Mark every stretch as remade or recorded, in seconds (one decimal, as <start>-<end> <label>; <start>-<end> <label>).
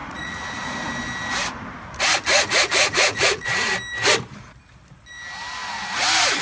0.0-0.9 remade; 0.9-2.3 recorded; 2.3-3.7 remade; 3.7-6.4 recorded